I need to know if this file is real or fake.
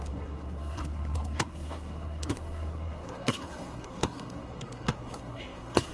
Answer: fake